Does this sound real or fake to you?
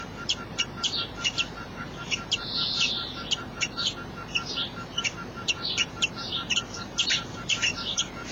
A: fake